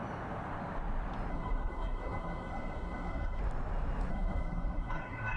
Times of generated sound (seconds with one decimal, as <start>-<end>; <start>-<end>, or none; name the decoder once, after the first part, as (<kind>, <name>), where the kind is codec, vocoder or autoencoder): 1.3-3.4 (codec, SNAC); 4.1-5.4